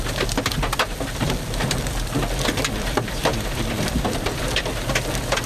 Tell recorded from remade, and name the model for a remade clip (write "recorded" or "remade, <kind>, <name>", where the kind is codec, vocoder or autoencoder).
remade, vocoder, BigVGAN v2